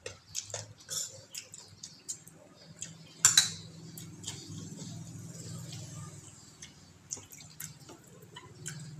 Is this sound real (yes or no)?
yes